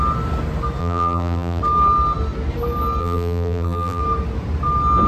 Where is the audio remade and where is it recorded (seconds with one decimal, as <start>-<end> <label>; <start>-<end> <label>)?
0.0-0.8 recorded; 0.8-1.6 remade; 1.6-3.0 recorded; 3.0-4.0 remade; 4.0-5.1 recorded